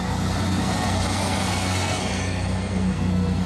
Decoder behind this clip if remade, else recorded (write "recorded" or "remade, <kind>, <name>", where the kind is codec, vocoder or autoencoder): remade, codec, SNAC